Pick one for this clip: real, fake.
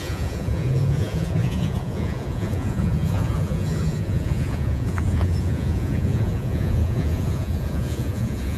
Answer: fake